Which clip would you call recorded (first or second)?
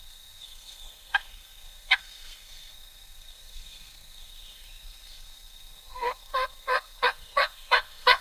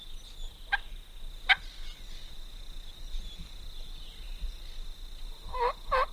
second